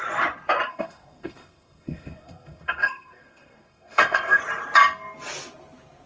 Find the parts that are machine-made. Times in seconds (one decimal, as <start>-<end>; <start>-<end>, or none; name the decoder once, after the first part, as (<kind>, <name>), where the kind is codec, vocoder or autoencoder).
0.7-4.4 (codec, SNAC)